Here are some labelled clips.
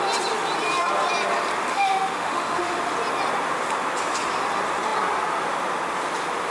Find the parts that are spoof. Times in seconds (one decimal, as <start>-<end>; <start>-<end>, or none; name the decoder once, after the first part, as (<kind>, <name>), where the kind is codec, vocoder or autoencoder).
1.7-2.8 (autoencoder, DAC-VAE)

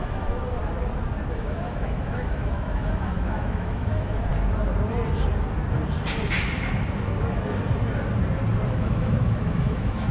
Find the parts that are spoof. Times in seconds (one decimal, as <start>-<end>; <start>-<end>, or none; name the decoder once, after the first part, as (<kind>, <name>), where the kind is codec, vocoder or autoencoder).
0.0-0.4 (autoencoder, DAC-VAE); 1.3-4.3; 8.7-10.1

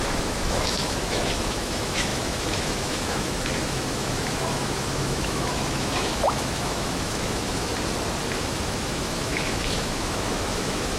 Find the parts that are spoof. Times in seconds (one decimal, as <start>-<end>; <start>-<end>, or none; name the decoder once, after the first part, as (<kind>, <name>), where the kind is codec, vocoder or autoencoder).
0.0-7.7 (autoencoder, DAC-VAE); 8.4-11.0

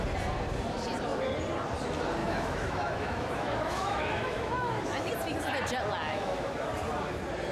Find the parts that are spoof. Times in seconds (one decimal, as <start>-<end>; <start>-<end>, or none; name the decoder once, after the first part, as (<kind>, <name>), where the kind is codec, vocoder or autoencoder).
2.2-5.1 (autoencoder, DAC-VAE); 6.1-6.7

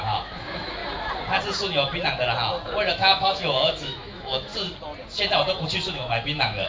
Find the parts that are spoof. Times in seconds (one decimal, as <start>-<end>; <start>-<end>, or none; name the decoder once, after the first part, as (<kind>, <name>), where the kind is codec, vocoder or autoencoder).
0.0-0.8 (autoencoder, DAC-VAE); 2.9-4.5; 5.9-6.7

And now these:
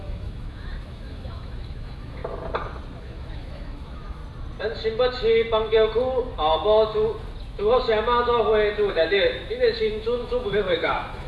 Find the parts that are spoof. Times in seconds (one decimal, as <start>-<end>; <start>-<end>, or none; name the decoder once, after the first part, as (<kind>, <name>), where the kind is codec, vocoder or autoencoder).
0.0-2.2 (autoencoder, DAC-VAE); 3.0-4.2; 8.9-11.3

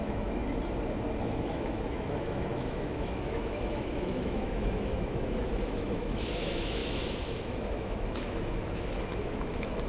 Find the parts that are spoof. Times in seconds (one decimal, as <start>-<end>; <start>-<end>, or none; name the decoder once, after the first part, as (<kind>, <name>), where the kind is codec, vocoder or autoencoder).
0.0-0.4 (autoencoder, DAC-VAE); 1.2-9.9